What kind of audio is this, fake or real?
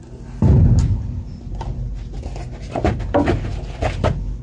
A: real